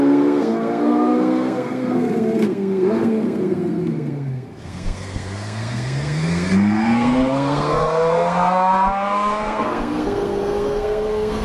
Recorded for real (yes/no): no